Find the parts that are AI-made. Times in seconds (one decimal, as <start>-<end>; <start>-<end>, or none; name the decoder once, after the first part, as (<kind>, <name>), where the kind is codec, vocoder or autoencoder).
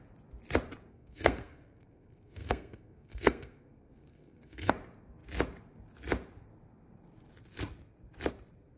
0.9-4.7 (codec, SNAC)